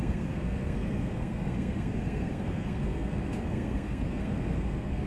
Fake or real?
fake